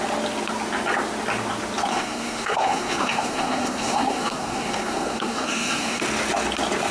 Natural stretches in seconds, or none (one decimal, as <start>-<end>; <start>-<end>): 0.0-1.9; 6.0-6.9